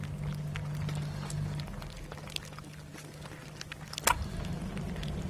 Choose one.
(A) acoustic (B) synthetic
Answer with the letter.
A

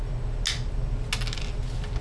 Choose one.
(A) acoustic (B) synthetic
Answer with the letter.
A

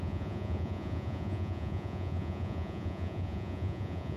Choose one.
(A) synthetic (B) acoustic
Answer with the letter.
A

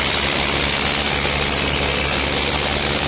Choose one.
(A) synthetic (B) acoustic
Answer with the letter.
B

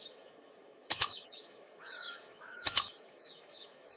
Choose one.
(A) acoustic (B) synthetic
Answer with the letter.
B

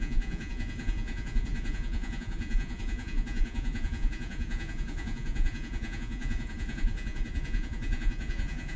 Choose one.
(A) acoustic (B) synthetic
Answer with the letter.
B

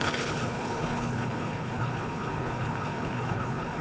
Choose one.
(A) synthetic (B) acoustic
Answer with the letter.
A